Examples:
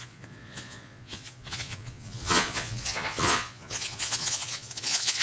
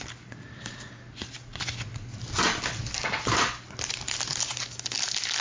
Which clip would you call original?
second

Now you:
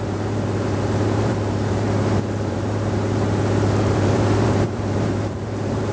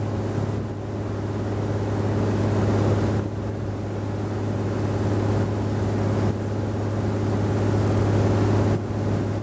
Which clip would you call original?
second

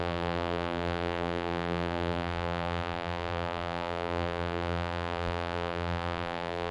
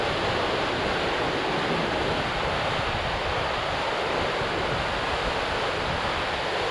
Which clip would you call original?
second